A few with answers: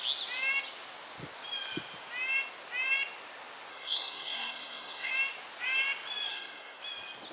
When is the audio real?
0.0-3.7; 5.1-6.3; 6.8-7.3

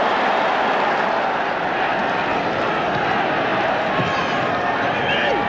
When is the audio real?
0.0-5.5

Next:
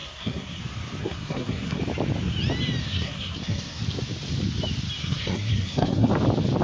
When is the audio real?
0.6-1.0; 1.8-2.8; 3.8-5.0; 6.1-6.6

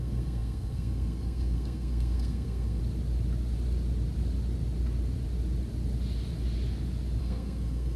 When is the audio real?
2.8-7.2